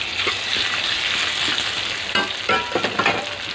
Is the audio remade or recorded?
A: recorded